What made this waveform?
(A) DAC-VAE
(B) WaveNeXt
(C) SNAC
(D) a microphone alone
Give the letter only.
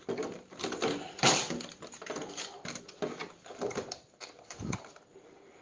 D